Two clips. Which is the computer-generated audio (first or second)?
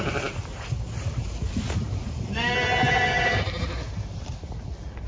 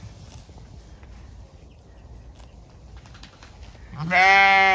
first